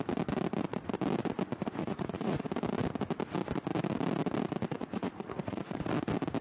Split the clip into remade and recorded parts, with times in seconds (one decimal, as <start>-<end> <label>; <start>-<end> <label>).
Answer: 0.0-1.8 recorded; 1.8-2.5 remade; 2.5-4.7 recorded; 4.7-5.9 remade; 5.9-6.4 recorded